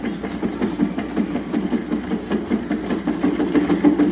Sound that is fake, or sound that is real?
real